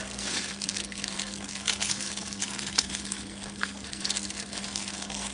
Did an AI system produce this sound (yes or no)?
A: yes